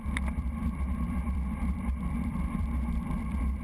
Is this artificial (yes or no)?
yes